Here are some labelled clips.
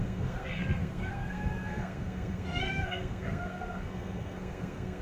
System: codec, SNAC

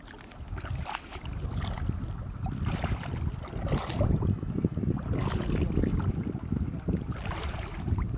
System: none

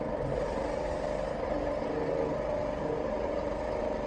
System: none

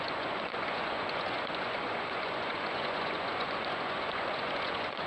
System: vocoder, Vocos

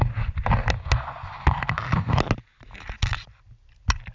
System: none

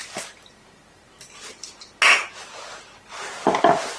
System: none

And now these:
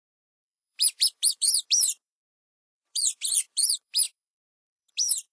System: vocoder, BigVGAN v2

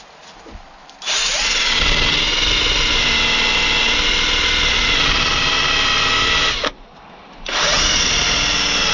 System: none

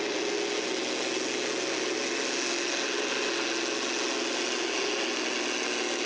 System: none